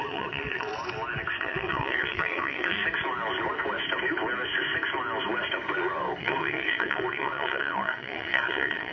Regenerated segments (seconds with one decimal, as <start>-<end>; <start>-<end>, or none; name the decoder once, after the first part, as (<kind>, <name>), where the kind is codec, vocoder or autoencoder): 0.0-0.7 (vocoder, WaveNeXt); 1.4-2.8; 6.2-8.9